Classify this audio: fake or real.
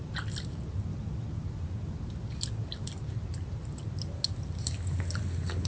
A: real